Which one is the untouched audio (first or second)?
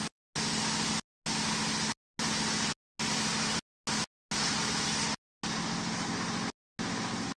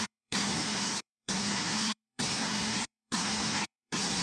first